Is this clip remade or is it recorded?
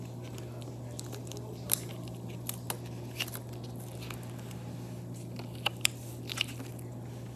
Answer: recorded